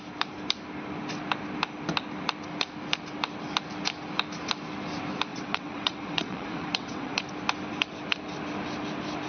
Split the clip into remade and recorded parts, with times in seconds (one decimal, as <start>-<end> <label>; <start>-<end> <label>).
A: 0.0-5.3 recorded; 5.3-7.2 remade; 7.2-9.3 recorded